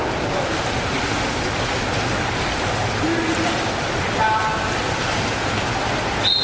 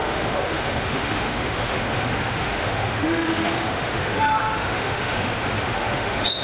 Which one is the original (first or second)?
first